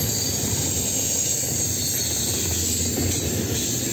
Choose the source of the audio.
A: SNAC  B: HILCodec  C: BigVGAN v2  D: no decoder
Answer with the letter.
D